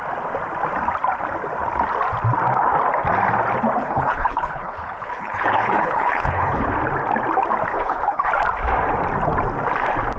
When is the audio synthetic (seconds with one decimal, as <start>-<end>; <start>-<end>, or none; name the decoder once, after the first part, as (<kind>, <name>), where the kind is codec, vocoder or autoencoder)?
3.8-6.7 (codec, HILCodec); 7.7-8.3